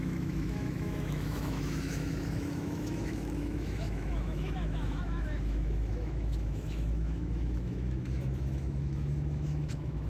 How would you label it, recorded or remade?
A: remade